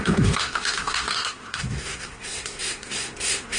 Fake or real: fake